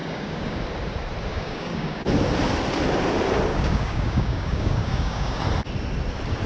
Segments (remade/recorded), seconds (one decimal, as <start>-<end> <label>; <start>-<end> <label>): 0.0-0.6 remade; 0.6-1.3 recorded; 1.3-2.1 remade; 2.1-3.5 recorded; 3.5-5.4 remade; 5.4-6.5 recorded